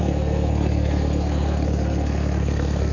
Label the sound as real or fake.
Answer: fake